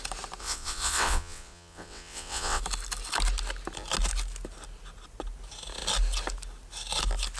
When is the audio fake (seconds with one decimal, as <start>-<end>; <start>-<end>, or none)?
0.4-2.6